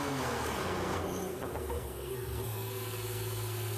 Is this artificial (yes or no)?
yes